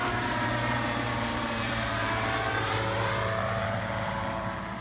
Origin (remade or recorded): remade